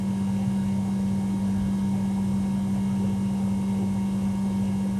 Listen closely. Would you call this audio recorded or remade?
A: recorded